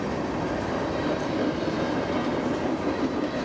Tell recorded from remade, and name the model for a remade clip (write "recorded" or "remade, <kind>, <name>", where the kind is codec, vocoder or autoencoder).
recorded